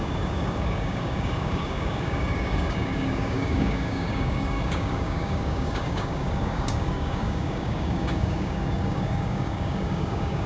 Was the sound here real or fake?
fake